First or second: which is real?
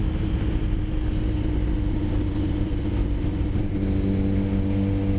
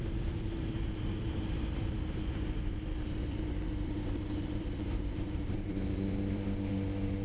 first